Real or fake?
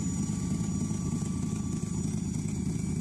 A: real